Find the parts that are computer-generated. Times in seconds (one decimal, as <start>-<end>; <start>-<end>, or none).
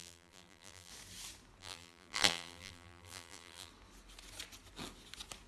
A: 0.0-0.9; 1.6-3.7